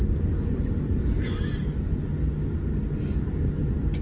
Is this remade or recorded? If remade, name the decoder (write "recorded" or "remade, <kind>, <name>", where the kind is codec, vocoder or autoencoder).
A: recorded